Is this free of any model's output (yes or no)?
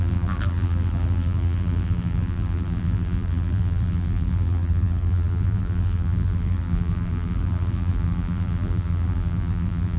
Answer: no